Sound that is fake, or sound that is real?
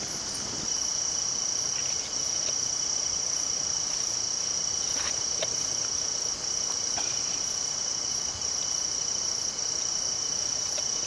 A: real